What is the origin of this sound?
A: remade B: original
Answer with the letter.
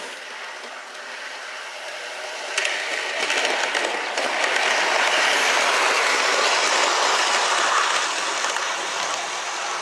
B